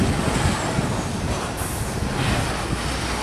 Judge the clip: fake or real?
real